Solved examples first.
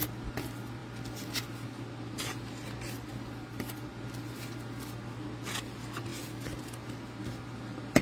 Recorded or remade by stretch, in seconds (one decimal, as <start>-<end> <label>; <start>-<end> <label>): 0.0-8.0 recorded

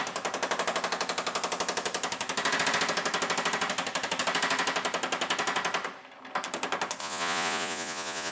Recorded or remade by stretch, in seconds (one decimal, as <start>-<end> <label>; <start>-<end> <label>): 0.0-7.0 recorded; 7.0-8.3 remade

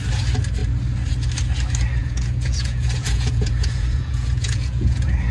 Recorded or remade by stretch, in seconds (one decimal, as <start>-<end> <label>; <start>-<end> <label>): 0.0-2.0 recorded; 2.0-5.3 remade

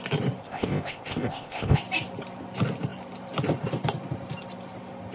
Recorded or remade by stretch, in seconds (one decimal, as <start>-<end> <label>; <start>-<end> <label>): 0.0-0.4 recorded; 0.4-1.8 remade; 1.8-5.1 recorded

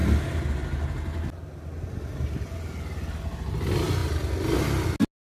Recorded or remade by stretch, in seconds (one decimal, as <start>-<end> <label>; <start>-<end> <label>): 0.0-5.3 recorded

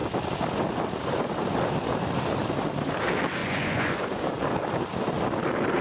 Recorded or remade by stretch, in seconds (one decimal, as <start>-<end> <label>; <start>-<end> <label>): 0.0-3.4 recorded; 3.4-4.3 remade; 4.3-5.8 recorded